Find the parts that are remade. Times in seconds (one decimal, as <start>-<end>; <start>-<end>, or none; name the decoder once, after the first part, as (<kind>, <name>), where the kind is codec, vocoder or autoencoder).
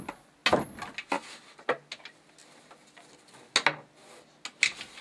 none